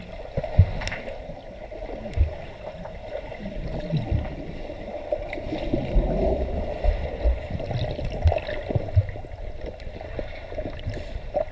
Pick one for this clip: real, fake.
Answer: real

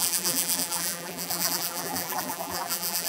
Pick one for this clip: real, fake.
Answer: fake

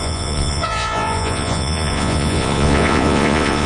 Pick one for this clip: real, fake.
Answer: fake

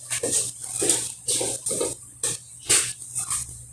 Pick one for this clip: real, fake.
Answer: real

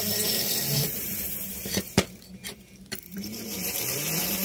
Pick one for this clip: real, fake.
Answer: fake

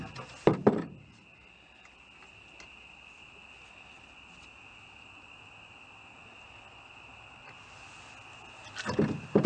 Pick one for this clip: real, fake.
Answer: real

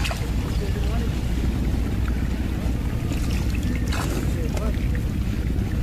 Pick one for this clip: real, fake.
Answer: real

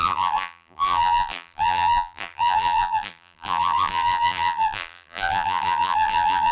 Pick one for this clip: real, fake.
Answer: fake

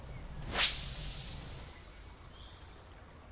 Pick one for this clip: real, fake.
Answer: real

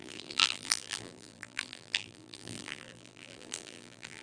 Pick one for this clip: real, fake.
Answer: fake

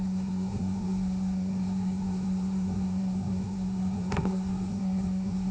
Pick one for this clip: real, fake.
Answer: fake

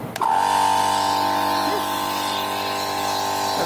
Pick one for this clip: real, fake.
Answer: real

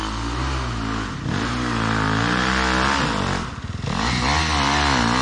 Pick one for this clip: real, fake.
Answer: real